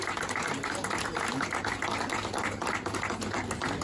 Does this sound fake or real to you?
real